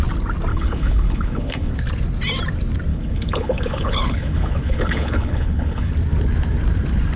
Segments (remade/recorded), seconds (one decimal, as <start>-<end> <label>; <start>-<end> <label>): 0.0-0.5 recorded; 0.5-1.7 remade; 1.7-2.9 recorded; 2.9-5.9 remade; 5.9-7.2 recorded